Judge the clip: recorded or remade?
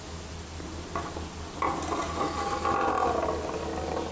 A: recorded